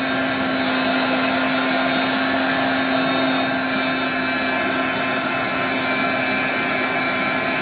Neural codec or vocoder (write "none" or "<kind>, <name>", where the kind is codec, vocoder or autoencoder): none